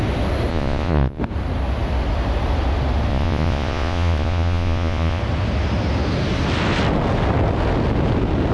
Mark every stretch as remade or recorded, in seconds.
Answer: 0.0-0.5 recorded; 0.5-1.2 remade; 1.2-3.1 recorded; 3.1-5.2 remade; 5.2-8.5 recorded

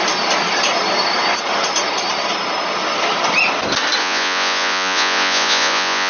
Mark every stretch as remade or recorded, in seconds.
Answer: 0.0-4.0 recorded; 4.0-6.1 remade

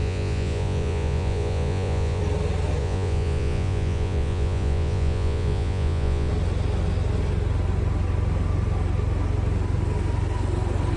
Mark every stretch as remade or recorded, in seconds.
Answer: 0.0-2.2 remade; 2.2-2.8 recorded; 2.8-6.3 remade; 6.3-11.0 recorded

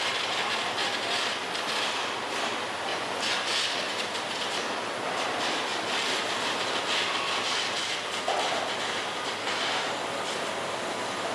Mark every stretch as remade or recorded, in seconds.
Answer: 0.0-2.9 recorded; 2.9-3.6 remade; 3.6-11.3 recorded

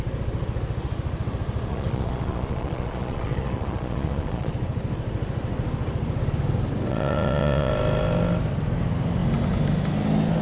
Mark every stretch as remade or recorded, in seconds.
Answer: 0.0-1.7 recorded; 1.7-4.5 remade; 4.5-6.9 recorded; 6.9-7.7 remade; 7.7-10.4 recorded

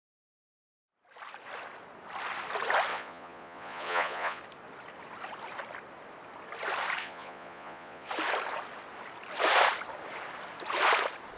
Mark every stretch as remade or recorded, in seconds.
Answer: 0.0-2.9 recorded; 2.9-4.4 remade; 4.4-7.0 recorded; 7.0-8.1 remade; 8.1-11.4 recorded

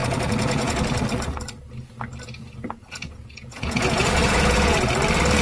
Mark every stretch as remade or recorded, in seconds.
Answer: 0.0-0.8 remade; 0.8-2.8 recorded; 2.8-4.9 remade; 4.9-5.4 recorded

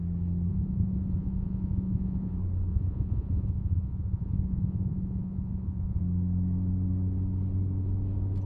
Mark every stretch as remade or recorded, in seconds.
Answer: 0.0-0.5 recorded; 0.5-2.3 remade; 2.3-2.7 recorded; 2.7-6.0 remade; 6.0-8.5 recorded